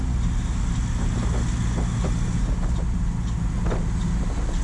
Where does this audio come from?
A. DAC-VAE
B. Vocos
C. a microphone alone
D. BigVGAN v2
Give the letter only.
C